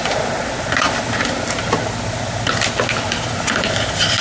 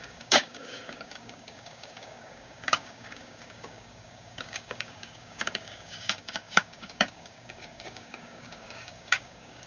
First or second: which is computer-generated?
second